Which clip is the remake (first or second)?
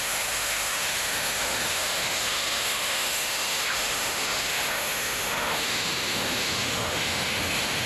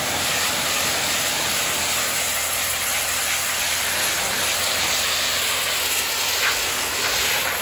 first